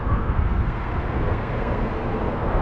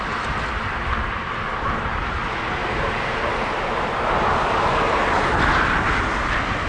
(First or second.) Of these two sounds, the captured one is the second